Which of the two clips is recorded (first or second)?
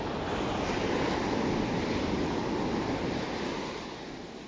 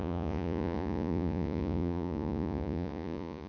first